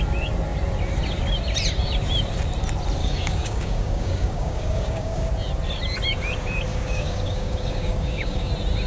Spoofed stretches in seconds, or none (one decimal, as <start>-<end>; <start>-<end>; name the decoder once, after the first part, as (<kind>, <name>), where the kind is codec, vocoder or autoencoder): 3.0-5.3 (codec, DAC); 6.7-8.5